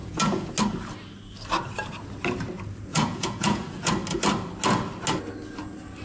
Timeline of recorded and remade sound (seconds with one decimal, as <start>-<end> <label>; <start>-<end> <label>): 0.0-0.5 remade; 0.5-2.9 recorded; 2.9-3.9 remade; 3.9-6.0 recorded